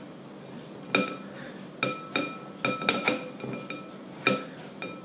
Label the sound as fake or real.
real